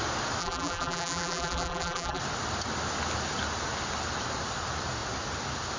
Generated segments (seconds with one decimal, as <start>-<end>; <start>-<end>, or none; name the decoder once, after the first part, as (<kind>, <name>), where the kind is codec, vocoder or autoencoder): 0.4-2.2 (vocoder, BigVGAN v2)